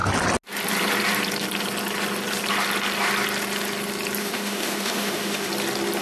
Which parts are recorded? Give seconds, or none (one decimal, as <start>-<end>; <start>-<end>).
0.0-4.2; 5.5-6.0